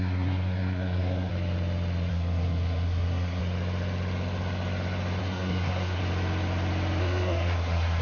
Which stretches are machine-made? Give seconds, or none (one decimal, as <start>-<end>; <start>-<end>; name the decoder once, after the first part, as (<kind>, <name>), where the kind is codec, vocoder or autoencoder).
0.0-1.3 (codec, SNAC); 2.1-3.4; 5.2-6.0; 7.0-8.0